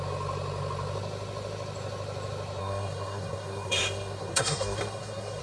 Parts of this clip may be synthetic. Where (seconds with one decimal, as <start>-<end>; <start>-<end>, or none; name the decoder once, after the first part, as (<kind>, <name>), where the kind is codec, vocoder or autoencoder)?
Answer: 2.6-5.4 (codec, SNAC)